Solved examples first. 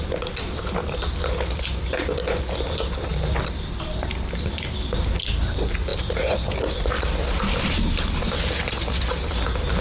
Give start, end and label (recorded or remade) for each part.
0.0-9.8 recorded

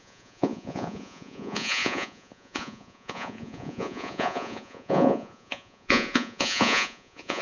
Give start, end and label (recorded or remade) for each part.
0.0-7.4 remade

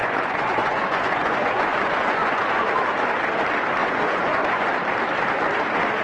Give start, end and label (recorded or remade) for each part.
0.0-2.7 remade; 2.7-3.8 recorded; 3.8-4.7 remade; 4.7-6.0 recorded

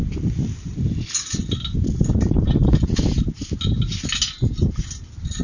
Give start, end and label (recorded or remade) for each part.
0.0-5.4 recorded

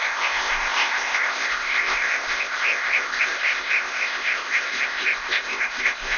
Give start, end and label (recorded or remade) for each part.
0.0-6.2 remade